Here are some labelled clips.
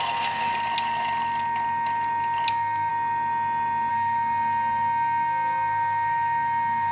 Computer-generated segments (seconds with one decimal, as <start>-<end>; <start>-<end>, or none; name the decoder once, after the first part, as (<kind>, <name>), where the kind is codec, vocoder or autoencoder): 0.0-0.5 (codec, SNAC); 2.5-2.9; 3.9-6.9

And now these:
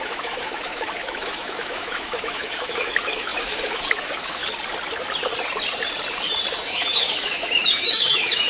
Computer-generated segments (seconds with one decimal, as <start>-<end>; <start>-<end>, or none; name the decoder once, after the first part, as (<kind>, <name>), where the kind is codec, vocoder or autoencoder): 0.0-4.4 (autoencoder, DAC-VAE); 6.5-8.5

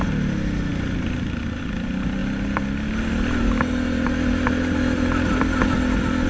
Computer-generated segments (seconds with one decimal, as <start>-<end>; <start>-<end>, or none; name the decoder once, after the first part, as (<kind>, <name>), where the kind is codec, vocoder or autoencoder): none

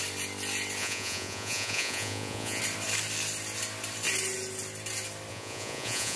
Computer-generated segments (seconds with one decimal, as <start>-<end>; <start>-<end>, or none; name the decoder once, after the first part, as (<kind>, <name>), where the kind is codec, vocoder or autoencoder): 0.8-2.6 (vocoder, Vocos); 5.3-6.2

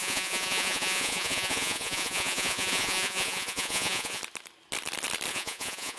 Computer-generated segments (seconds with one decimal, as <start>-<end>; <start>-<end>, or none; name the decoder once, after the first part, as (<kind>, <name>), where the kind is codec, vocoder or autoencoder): 0.0-4.2 (vocoder, Vocos); 5.3-6.0

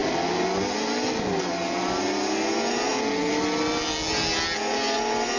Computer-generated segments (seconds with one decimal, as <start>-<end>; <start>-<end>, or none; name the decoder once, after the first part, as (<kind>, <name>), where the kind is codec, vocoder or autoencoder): none

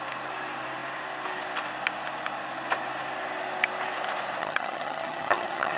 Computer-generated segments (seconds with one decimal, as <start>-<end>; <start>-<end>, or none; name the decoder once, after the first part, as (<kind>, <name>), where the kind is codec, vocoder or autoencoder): 4.4-5.8 (vocoder, HiFi-GAN)